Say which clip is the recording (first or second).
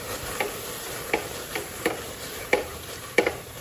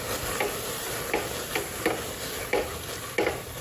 second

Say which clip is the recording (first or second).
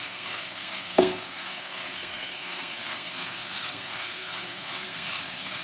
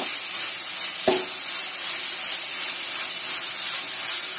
second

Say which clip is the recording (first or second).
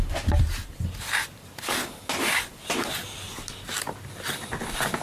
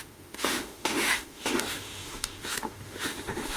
first